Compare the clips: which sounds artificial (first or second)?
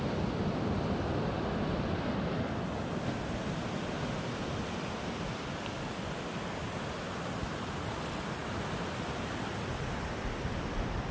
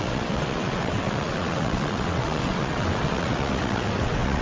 second